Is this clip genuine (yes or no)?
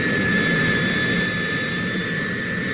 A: no